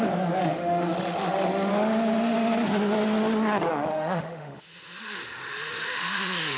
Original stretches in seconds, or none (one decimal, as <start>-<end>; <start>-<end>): 0.0-0.4; 1.7-3.9